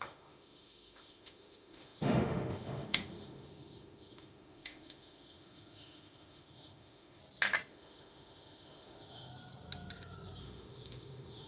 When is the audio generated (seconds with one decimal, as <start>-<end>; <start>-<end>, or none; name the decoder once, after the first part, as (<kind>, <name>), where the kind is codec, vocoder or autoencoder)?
0.0-7.2 (autoencoder, DAC-VAE); 7.7-9.3; 10.4-11.5